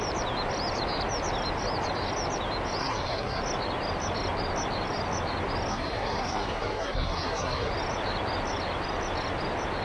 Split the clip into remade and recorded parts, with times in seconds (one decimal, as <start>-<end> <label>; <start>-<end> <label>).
0.0-2.8 recorded; 2.8-3.4 remade; 3.4-5.7 recorded; 5.7-7.7 remade; 7.7-9.8 recorded